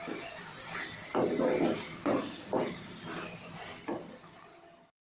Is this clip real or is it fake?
real